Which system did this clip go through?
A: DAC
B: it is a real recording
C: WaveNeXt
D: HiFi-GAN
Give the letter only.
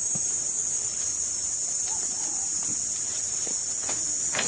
B